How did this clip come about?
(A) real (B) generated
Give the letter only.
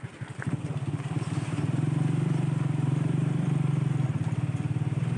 B